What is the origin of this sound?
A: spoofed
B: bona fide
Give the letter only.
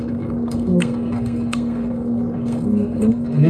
A